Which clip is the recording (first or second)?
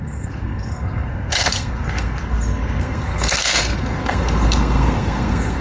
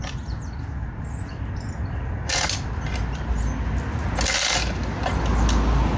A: second